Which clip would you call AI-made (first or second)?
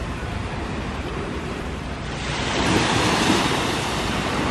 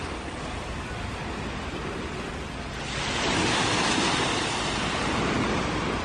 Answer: first